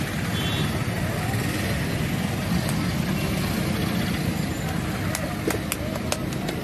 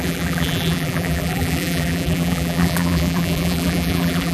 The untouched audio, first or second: first